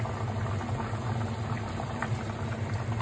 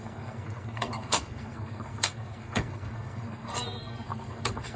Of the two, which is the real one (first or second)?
first